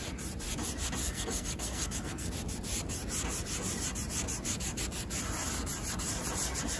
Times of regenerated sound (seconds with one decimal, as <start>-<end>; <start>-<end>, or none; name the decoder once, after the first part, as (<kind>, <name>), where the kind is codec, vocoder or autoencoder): 1.0-2.3 (codec, SNAC)